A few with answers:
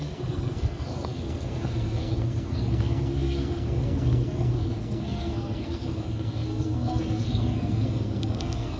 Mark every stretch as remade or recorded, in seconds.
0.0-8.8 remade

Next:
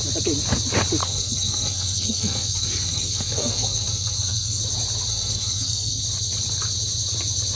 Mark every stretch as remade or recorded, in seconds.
0.0-1.0 recorded; 1.0-4.6 remade; 4.6-5.1 recorded; 5.1-6.0 remade; 6.0-7.5 recorded

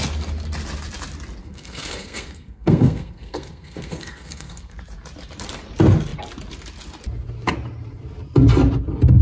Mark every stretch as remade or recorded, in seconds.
0.0-1.4 recorded; 1.4-4.8 remade; 4.8-9.2 recorded

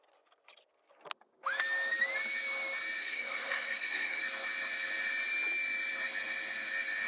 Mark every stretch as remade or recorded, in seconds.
0.0-3.0 recorded; 3.0-4.2 remade; 4.2-7.1 recorded

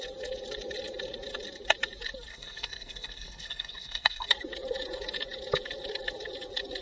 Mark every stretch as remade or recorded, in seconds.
0.0-2.3 recorded; 2.3-4.3 remade; 4.3-6.8 recorded

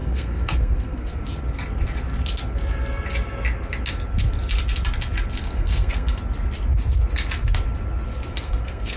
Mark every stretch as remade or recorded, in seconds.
0.0-1.2 remade; 1.2-5.4 recorded; 5.4-6.2 remade; 6.2-8.3 recorded; 8.3-9.0 remade

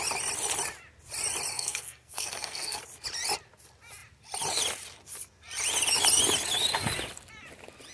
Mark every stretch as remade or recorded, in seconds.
0.0-1.5 recorded; 1.5-2.8 remade; 2.8-7.9 recorded

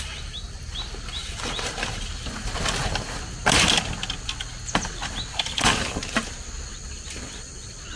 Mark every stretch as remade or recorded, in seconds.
0.0-8.0 recorded